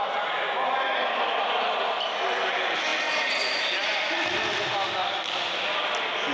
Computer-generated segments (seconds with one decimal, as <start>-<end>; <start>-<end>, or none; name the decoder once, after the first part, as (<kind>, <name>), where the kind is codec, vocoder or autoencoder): none

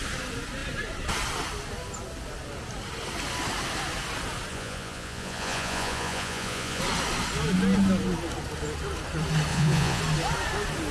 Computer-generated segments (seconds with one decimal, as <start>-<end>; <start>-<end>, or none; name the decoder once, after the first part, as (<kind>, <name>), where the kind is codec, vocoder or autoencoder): 4.5-6.8 (vocoder, Vocos); 9.5-10.0